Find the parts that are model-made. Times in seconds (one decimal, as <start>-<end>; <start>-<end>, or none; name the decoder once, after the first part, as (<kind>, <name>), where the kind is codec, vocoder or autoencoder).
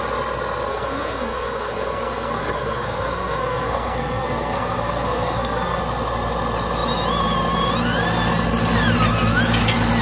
0.7-5.8 (codec, SNAC)